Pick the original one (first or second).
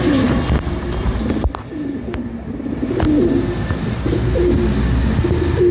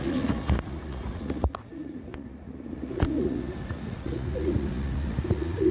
first